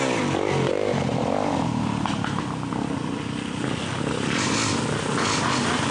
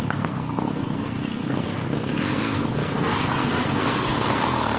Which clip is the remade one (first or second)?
second